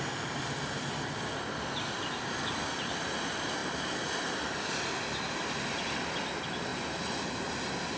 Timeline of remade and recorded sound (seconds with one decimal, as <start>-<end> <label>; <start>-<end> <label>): 0.0-8.0 recorded